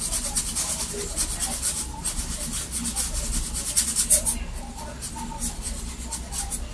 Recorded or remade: recorded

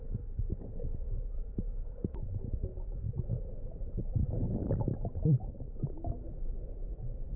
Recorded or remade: recorded